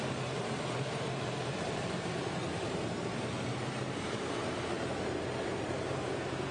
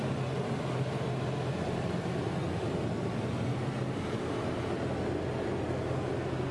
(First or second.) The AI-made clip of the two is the first